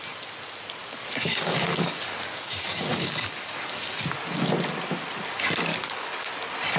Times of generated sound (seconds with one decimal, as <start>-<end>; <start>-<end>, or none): 0.8-2.5; 2.9-4.0; 5.7-6.3